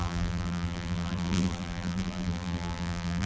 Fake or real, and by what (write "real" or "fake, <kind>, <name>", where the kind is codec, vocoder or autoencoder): fake, vocoder, BigVGAN v2